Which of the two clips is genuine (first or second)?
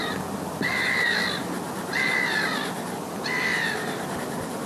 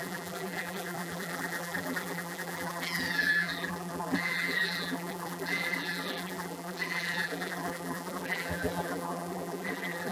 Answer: first